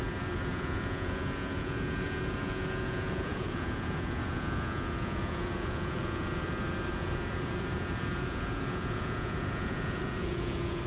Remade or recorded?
remade